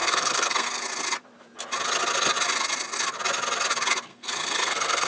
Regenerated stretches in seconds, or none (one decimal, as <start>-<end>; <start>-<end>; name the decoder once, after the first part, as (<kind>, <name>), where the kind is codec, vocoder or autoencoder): 0.0-0.8 (codec, SNAC); 4.1-5.1